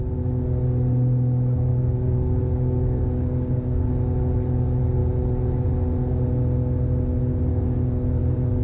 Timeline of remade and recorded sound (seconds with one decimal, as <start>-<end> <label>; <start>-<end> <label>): 0.0-1.7 recorded; 1.7-3.9 remade; 3.9-7.5 recorded; 7.5-8.2 remade; 8.2-8.6 recorded